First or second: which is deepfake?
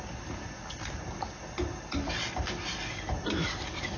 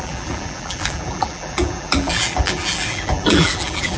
second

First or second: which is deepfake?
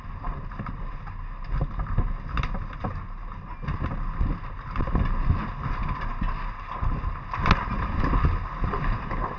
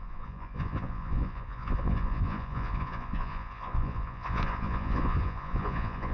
second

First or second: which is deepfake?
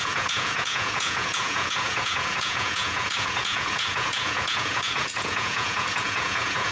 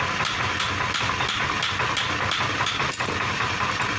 first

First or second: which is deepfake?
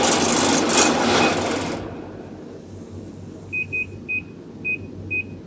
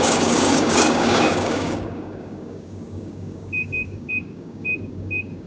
second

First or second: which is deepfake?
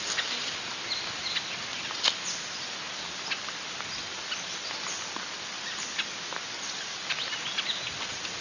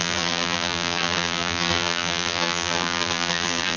second